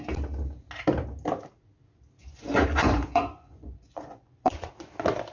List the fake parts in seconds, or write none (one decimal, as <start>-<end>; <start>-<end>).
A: 2.2-4.7